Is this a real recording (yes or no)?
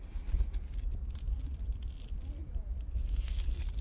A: yes